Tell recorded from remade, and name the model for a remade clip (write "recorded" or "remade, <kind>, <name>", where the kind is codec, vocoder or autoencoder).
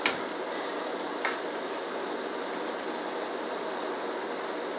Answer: recorded